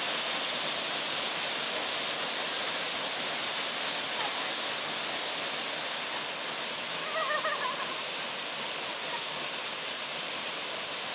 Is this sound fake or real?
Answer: real